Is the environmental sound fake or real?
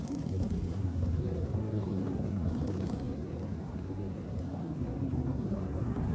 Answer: fake